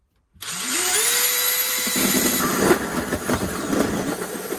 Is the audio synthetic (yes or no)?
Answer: yes